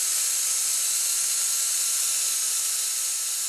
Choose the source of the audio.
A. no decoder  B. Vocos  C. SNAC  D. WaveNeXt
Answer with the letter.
A